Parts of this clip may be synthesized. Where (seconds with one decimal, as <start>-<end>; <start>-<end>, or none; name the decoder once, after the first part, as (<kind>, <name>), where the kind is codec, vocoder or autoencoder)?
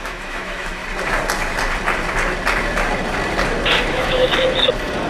0.0-0.8 (autoencoder, DAC-VAE); 3.9-4.3